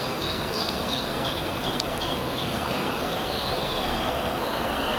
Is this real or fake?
fake